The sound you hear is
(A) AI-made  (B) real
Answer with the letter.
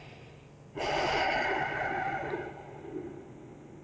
B